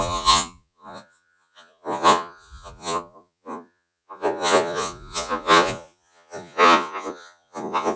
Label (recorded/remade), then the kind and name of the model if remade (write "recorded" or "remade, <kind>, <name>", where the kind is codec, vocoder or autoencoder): remade, vocoder, Vocos